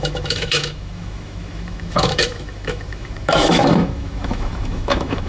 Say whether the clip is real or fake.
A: fake